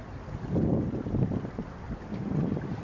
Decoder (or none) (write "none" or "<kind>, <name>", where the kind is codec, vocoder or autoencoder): none